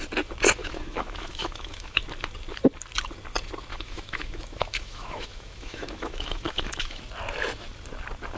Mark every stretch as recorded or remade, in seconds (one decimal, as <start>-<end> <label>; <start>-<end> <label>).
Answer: 0.0-0.6 recorded; 0.6-2.0 remade; 2.0-3.7 recorded; 3.7-7.0 remade; 7.0-8.4 recorded